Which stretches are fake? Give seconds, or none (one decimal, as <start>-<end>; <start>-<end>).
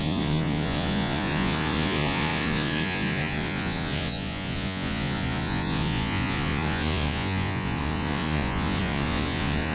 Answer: 0.0-9.7